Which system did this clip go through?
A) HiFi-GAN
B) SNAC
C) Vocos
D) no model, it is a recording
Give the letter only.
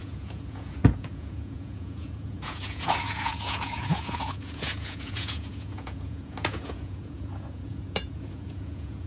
C